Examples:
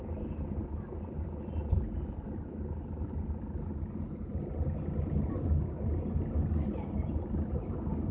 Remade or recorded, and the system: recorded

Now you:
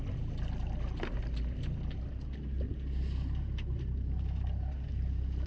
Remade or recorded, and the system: recorded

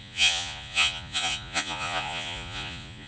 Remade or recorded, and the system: remade, vocoder, Vocos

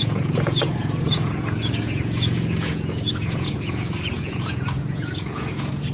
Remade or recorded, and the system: remade, vocoder, Vocos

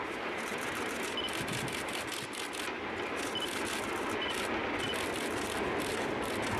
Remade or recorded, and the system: recorded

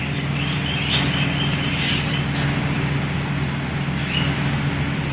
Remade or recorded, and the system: recorded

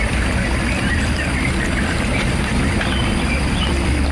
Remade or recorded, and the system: recorded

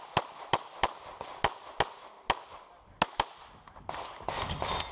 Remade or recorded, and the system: recorded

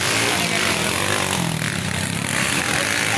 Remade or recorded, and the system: recorded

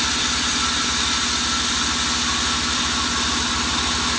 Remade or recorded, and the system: recorded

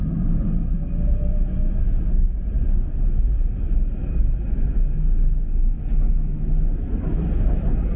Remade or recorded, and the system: recorded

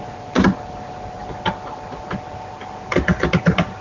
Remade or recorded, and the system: recorded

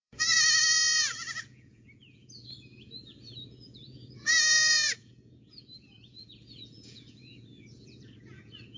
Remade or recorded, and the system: remade, vocoder, Vocos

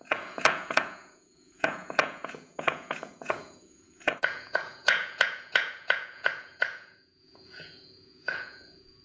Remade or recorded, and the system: remade, vocoder, Vocos